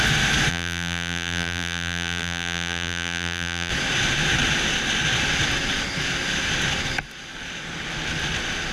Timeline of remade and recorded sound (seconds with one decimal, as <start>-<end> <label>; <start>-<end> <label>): 0.0-0.5 recorded; 0.5-3.7 remade; 3.7-8.7 recorded